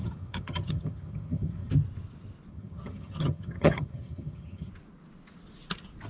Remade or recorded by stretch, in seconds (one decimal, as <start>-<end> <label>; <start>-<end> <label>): 0.0-1.7 remade; 1.7-2.5 recorded; 2.5-4.7 remade; 4.7-6.1 recorded